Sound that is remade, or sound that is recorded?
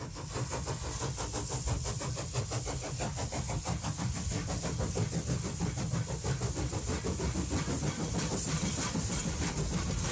recorded